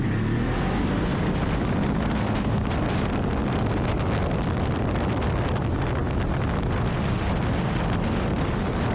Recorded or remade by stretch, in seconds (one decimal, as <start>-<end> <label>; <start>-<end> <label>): 0.0-8.9 recorded